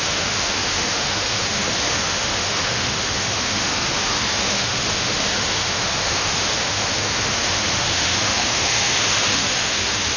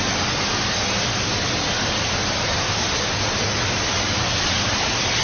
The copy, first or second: first